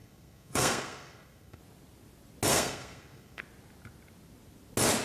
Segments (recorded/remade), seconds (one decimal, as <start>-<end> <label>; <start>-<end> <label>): 0.0-1.6 remade; 1.6-2.5 recorded; 2.5-3.4 remade; 3.4-5.0 recorded